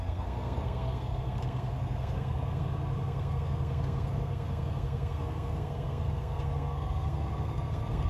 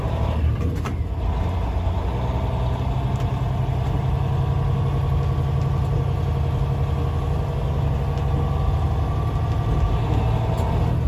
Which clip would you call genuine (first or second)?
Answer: second